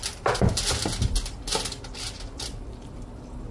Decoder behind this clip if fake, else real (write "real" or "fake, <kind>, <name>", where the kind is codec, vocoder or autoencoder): real